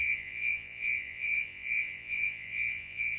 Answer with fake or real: fake